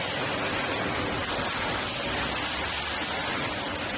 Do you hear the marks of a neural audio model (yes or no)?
yes